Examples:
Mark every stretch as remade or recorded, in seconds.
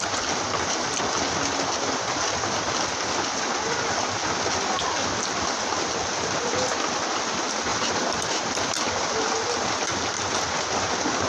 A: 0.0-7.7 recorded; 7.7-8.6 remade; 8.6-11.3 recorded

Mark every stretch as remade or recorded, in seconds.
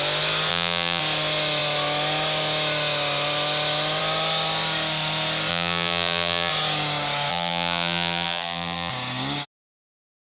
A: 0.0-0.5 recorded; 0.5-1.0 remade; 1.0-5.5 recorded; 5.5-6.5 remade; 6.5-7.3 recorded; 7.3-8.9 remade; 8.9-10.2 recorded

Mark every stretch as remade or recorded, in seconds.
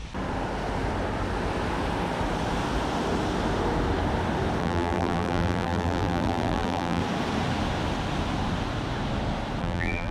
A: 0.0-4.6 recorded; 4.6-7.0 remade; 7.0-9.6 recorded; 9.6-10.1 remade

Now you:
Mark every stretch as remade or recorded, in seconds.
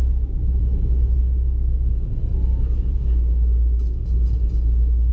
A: 0.0-2.3 remade; 2.3-5.1 recorded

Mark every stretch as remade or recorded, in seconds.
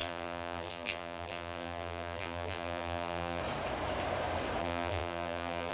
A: 0.0-3.4 remade; 3.4-4.6 recorded; 4.6-5.7 remade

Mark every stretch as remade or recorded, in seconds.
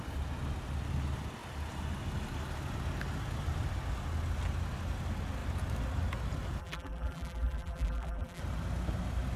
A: 0.0-6.6 recorded; 6.6-8.4 remade; 8.4-9.4 recorded